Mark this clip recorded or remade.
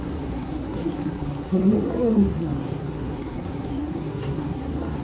remade